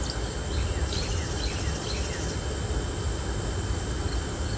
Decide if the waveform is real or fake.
real